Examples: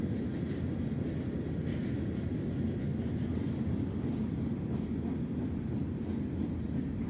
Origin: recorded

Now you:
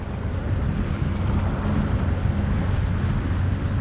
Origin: recorded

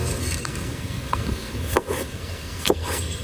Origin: remade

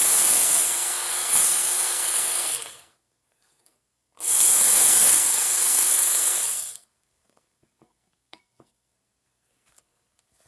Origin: remade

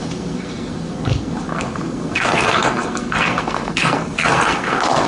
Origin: remade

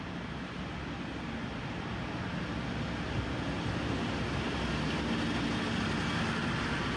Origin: recorded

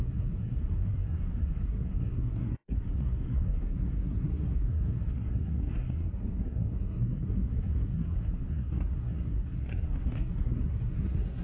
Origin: remade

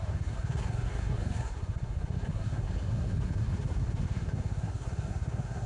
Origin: remade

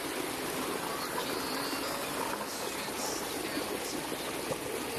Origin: recorded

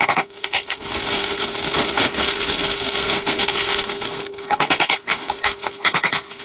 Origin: remade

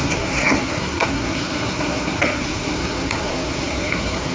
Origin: remade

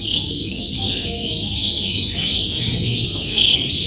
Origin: remade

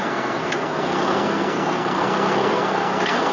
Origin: remade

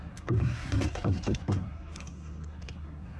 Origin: remade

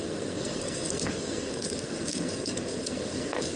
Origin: remade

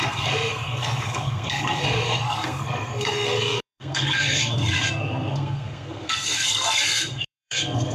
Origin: remade